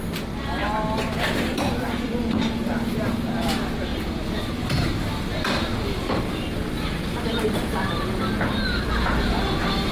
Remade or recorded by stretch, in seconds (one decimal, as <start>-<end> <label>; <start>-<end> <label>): 0.0-0.6 remade; 0.6-1.6 recorded; 1.6-9.9 remade